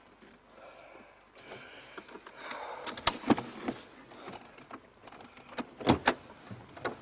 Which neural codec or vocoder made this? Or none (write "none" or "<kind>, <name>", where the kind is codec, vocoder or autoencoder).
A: none